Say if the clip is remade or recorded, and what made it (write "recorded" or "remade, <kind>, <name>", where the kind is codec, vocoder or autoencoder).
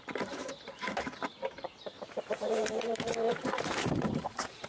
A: remade, vocoder, BigVGAN v2